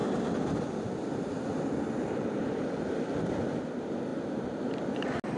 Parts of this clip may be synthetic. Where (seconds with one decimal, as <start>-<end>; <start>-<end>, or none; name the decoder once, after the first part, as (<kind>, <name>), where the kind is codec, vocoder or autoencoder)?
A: none